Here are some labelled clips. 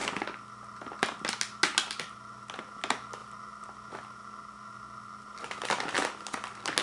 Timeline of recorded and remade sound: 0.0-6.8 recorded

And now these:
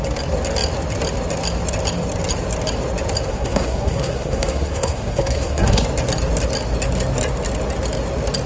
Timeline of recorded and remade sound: 0.0-3.3 recorded; 3.3-5.8 remade; 5.8-8.5 recorded